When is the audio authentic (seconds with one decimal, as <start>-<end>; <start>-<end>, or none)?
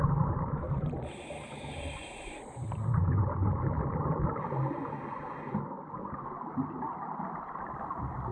0.0-3.4; 5.6-8.3